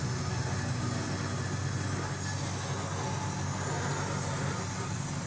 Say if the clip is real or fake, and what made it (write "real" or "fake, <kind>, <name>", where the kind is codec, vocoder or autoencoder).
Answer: real